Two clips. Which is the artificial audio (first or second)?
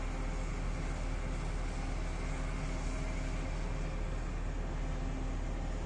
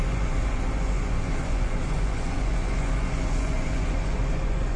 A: second